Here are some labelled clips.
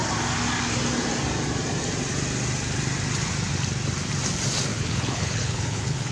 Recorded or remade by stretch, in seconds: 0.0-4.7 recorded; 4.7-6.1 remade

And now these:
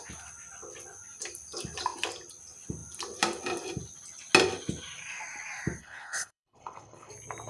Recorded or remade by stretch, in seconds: 0.0-5.8 recorded; 5.8-7.1 remade; 7.1-7.5 recorded

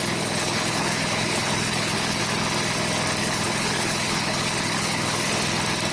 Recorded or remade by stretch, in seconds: 0.0-2.2 remade; 2.2-3.2 recorded; 3.2-5.3 remade; 5.3-5.9 recorded

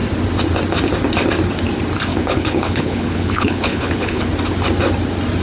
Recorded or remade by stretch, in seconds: 0.0-2.1 recorded; 2.1-4.3 remade; 4.3-5.4 recorded